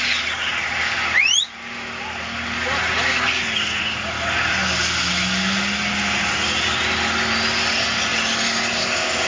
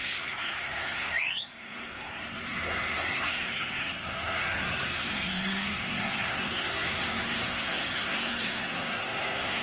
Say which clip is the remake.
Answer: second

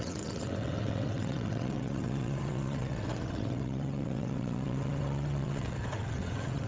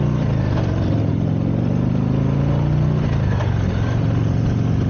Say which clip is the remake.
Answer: first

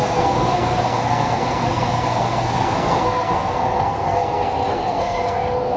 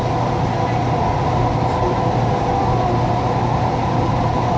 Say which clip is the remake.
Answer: first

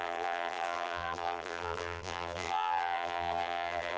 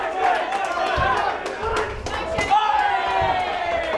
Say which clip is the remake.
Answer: first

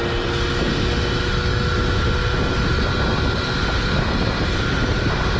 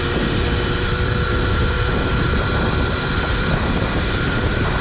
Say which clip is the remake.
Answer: second